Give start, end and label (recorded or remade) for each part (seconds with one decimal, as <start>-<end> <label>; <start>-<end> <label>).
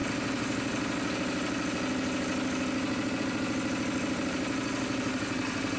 0.0-5.8 recorded